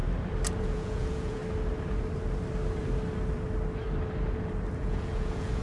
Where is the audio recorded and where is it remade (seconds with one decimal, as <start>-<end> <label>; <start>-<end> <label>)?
0.0-0.6 recorded; 0.6-1.4 remade; 1.4-4.8 recorded; 4.8-5.6 remade